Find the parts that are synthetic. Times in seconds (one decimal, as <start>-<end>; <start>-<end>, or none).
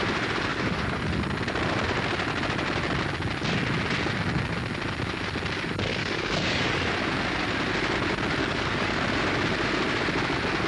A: 0.5-1.0; 6.0-6.9; 8.4-9.0